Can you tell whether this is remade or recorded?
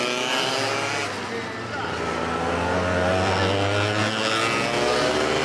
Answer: recorded